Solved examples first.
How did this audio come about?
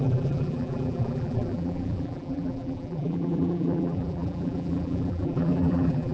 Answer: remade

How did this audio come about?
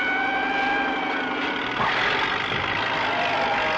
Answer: recorded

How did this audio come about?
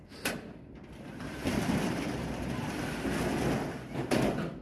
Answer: remade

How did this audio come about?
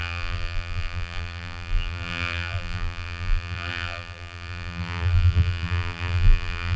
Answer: remade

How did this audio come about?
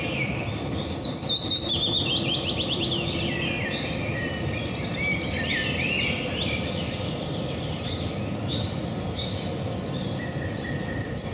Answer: remade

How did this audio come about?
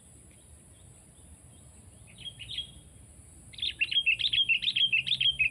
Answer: recorded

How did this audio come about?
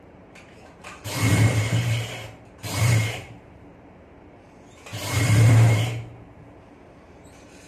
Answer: remade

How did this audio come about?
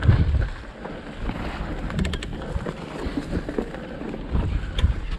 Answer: recorded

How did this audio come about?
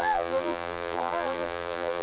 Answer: remade